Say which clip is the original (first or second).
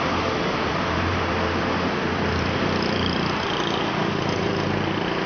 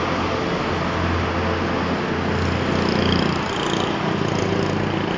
second